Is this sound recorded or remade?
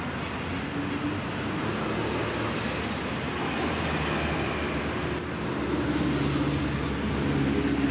recorded